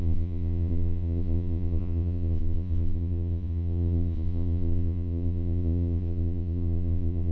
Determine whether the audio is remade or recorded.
remade